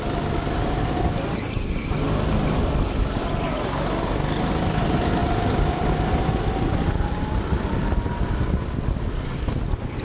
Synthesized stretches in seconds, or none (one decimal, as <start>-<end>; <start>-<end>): none